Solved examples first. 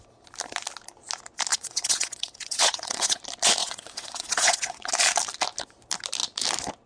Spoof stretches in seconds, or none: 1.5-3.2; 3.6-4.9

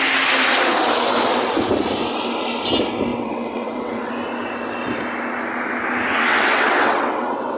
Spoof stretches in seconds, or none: 3.1-4.1; 6.1-7.6

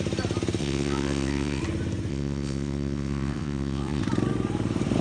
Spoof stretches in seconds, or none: 0.6-1.6; 2.1-4.0

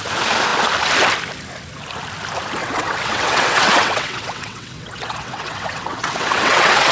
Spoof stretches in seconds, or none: 2.6-6.9

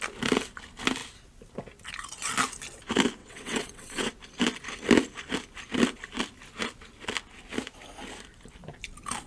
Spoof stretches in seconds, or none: 3.2-4.1

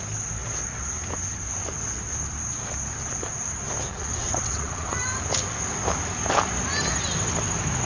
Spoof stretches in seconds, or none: 3.9-4.9

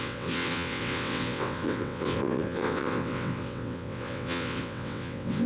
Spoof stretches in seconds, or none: 0.0-5.5